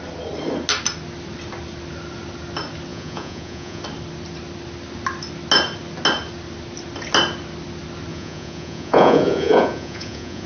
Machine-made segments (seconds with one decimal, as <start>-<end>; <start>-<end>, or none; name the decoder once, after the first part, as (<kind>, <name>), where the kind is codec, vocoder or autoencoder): 2.9-3.8 (vocoder, Vocos); 8.1-10.5